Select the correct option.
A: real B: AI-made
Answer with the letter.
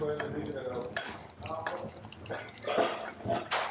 A